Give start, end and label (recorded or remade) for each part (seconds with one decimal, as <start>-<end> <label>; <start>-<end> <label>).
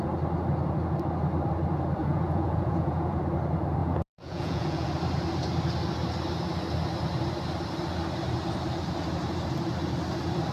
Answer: 0.0-2.0 recorded; 2.0-3.2 remade; 3.2-3.8 recorded; 3.8-4.9 remade; 4.9-10.5 recorded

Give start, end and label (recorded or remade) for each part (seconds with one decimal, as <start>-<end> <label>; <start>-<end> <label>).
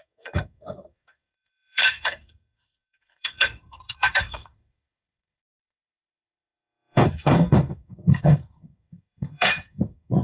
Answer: 0.0-10.2 remade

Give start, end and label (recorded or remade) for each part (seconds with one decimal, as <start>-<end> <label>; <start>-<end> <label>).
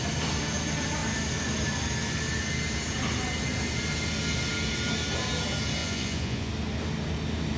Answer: 0.0-5.8 recorded; 5.8-6.5 remade; 6.5-7.6 recorded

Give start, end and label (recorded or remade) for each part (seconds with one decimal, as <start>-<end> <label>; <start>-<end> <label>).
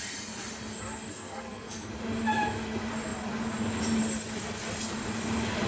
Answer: 0.0-1.1 recorded; 1.1-1.9 remade; 1.9-5.7 recorded